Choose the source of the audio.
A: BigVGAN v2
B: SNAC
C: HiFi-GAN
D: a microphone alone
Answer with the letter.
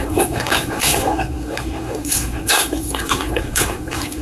B